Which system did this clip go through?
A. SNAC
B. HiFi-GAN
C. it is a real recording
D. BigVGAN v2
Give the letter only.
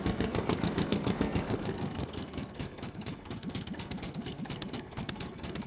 A